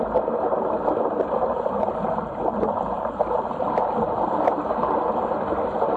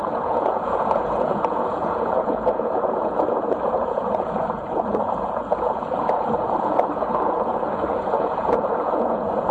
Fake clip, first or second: second